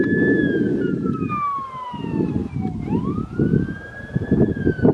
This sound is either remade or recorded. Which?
recorded